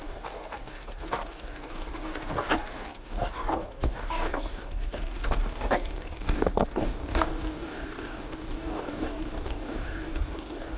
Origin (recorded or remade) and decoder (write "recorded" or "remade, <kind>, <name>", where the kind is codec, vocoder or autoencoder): remade, codec, DAC